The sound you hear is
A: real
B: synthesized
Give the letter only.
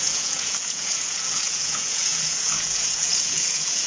B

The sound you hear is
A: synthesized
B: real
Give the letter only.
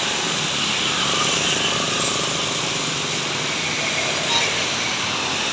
B